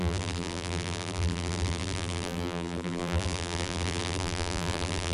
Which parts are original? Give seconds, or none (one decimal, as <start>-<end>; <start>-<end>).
none

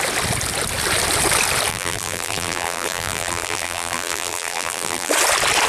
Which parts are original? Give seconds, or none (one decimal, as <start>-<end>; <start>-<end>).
0.0-1.7; 5.1-5.7

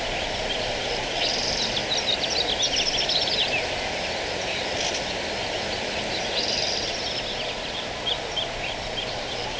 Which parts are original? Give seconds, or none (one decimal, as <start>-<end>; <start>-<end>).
1.8-2.8

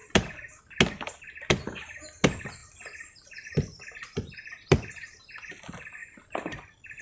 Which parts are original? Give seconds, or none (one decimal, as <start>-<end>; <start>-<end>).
0.0-2.6; 5.2-6.0